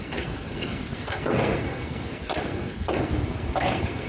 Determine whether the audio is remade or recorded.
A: remade